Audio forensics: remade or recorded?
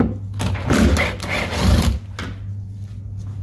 recorded